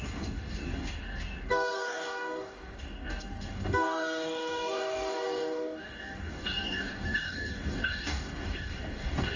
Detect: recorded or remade remade